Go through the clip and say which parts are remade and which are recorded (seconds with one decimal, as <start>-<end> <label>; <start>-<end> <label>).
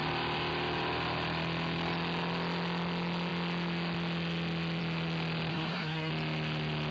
0.0-5.5 recorded; 5.5-6.1 remade; 6.1-6.9 recorded